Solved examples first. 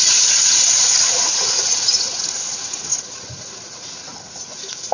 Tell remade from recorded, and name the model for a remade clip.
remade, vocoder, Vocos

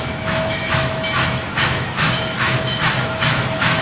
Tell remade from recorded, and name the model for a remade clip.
remade, autoencoder, DAC-VAE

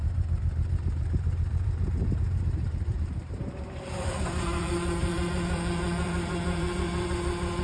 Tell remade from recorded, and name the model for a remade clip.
remade, vocoder, BigVGAN v2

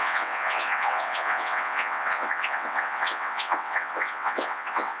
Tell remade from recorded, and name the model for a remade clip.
remade, vocoder, WaveNeXt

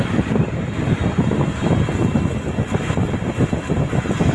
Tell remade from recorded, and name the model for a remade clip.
recorded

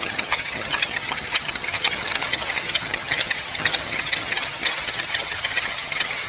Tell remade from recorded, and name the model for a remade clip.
remade, vocoder, HiFi-GAN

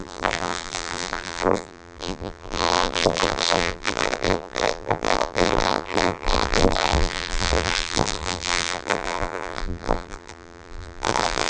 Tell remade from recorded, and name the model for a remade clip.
remade, vocoder, BigVGAN v2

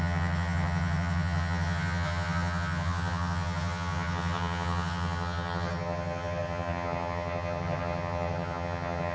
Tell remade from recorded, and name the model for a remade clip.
remade, vocoder, HiFi-GAN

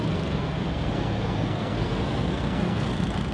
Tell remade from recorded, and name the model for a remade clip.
remade, codec, SNAC